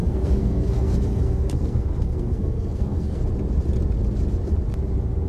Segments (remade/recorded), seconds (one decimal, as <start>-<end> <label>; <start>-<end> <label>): 0.0-3.2 remade; 3.2-5.3 recorded

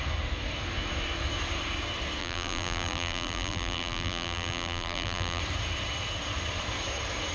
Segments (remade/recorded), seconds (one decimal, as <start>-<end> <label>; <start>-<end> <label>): 0.0-2.2 recorded; 2.2-5.4 remade; 5.4-7.3 recorded

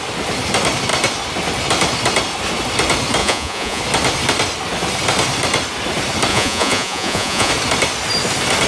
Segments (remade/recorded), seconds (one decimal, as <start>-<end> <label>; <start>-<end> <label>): 0.0-3.2 recorded; 3.2-3.8 remade; 3.8-6.3 recorded; 6.3-7.5 remade; 7.5-8.7 recorded